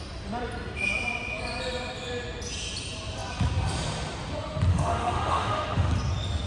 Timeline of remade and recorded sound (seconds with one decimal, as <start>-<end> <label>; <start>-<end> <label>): 0.0-4.7 recorded; 4.7-5.9 remade; 5.9-6.5 recorded

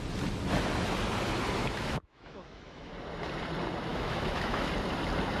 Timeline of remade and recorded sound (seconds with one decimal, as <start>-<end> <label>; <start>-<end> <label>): 0.0-1.6 recorded; 1.6-2.9 remade; 2.9-3.9 recorded; 3.9-4.7 remade; 4.7-5.4 recorded

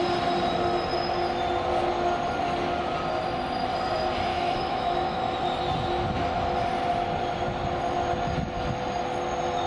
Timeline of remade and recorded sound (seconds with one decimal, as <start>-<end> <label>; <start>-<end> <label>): 0.0-4.3 recorded; 4.3-5.2 remade; 5.2-9.7 recorded

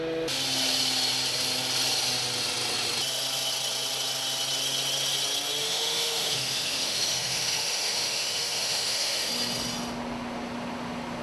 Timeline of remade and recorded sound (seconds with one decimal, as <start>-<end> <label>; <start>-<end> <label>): 0.0-5.6 recorded; 5.6-9.3 remade; 9.3-11.2 recorded